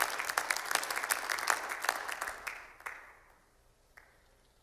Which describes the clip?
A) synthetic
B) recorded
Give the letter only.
B